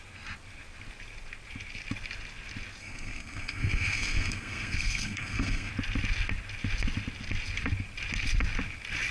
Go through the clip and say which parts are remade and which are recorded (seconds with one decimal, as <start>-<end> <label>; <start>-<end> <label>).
0.0-2.8 recorded; 2.8-5.7 remade; 5.7-9.1 recorded